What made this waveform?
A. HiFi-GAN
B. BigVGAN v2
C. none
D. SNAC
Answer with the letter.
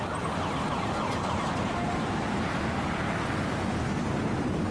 C